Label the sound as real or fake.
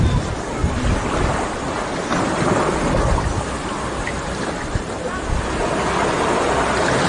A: real